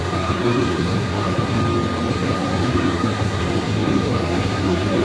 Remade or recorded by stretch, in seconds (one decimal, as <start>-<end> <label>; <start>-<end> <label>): 0.0-1.6 remade; 1.6-2.1 recorded; 2.1-5.0 remade